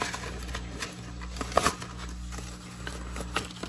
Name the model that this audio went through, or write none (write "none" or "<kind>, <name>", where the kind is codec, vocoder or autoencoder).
none